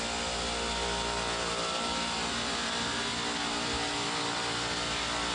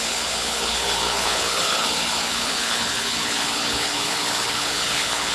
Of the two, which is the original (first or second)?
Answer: first